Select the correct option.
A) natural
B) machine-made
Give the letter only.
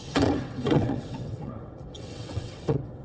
B